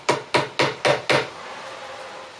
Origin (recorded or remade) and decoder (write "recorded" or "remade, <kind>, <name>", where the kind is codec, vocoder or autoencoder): recorded